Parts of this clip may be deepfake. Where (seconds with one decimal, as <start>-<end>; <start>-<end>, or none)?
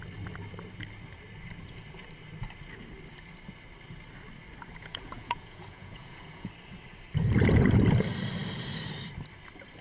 4.8-6.5